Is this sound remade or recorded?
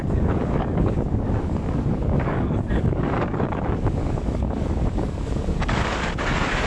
remade